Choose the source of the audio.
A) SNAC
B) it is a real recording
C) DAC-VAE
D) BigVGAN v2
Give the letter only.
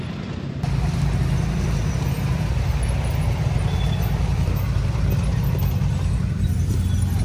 B